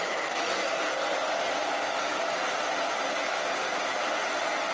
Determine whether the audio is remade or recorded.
recorded